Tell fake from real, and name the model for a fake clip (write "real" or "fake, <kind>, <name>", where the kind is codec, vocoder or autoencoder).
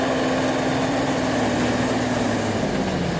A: real